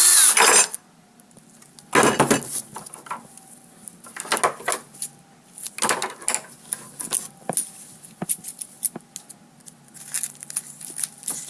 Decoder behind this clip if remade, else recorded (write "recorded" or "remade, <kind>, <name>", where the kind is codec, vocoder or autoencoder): recorded